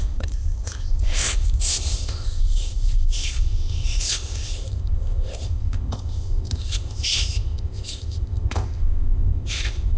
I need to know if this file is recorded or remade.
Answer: remade